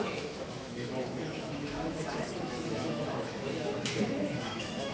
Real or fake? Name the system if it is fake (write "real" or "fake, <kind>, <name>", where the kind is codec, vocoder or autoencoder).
fake, autoencoder, DAC-VAE